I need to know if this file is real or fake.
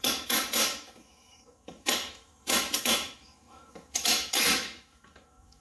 fake